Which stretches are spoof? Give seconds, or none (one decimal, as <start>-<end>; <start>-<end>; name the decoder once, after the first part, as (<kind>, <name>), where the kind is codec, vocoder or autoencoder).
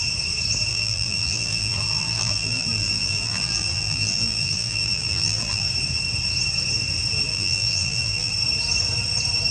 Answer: 0.7-5.7 (vocoder, BigVGAN v2); 7.3-8.3